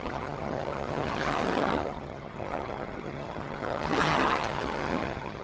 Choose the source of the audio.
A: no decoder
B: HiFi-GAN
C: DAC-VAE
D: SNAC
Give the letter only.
B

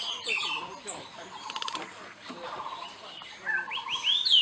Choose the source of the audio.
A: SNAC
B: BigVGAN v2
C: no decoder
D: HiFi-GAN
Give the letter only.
C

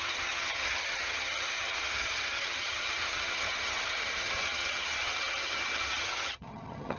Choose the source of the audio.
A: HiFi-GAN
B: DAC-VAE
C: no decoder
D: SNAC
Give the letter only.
A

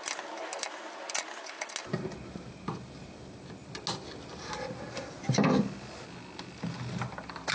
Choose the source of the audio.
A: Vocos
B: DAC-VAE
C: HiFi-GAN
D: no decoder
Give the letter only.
D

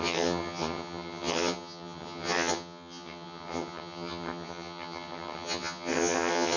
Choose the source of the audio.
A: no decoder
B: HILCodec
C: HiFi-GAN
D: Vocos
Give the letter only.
C